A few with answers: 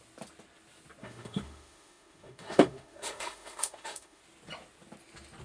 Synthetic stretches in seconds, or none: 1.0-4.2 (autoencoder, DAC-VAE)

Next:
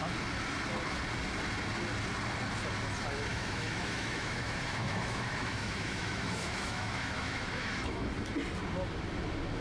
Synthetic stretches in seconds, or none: 3.3-8.1 (autoencoder, DAC-VAE)

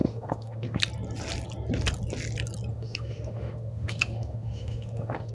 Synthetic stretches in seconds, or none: 0.0-0.8 (autoencoder, DAC-VAE); 2.7-5.3

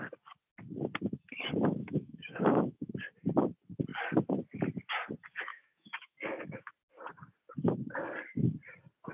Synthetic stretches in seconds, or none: 1.8-2.9 (autoencoder, DAC-VAE); 5.5-6.7

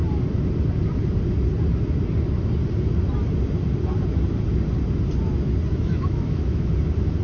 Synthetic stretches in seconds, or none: 5.7-6.7 (autoencoder, DAC-VAE)

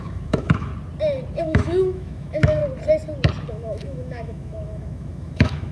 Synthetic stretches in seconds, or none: 0.0-0.7 (autoencoder, DAC-VAE); 1.4-2.6; 3.5-5.7

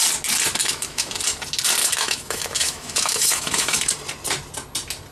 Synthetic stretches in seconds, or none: 0.6-1.1 (autoencoder, DAC-VAE); 1.8-3.9

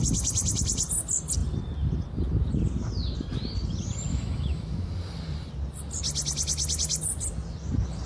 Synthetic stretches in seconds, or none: 4.1-4.9 (autoencoder, DAC-VAE)